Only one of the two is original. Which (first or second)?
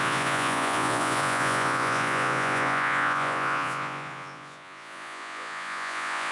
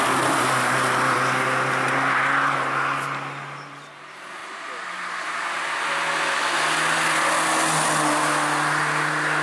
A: second